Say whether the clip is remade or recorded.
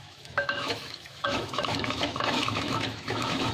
remade